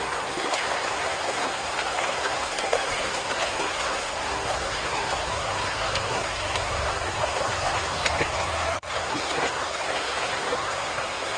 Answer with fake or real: fake